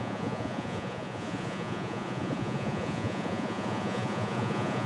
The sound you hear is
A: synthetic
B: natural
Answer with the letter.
A